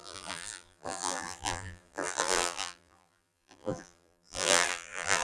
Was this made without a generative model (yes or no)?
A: no